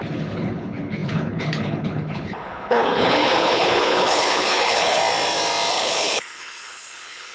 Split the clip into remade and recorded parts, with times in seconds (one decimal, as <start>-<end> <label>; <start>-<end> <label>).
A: 0.0-5.0 remade; 5.0-5.7 recorded; 5.7-7.3 remade